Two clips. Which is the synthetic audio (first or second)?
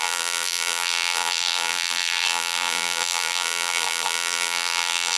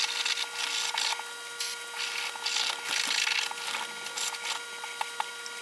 first